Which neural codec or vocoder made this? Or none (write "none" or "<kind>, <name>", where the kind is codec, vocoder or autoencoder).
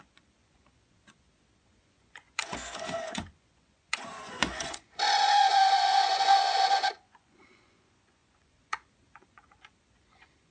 vocoder, Vocos